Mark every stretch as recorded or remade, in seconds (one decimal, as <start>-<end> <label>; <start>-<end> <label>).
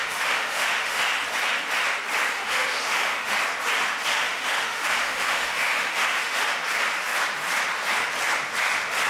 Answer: 0.0-1.0 remade; 1.0-2.3 recorded; 2.3-3.4 remade; 3.4-4.1 recorded; 4.1-6.6 remade; 6.6-9.1 recorded